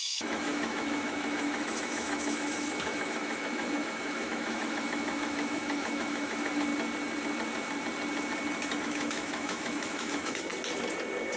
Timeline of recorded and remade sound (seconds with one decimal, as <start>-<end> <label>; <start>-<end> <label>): 0.0-6.7 remade; 6.7-8.8 recorded; 8.8-10.5 remade; 10.5-11.4 recorded